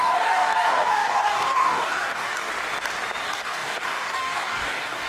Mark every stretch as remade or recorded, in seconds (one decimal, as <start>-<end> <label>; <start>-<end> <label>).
0.0-2.5 remade; 2.5-3.2 recorded; 3.2-5.1 remade